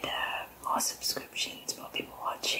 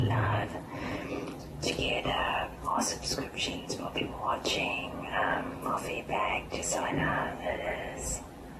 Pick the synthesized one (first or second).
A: second